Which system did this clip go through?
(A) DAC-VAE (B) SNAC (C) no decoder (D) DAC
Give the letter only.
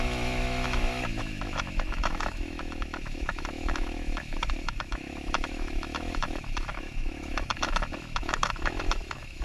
A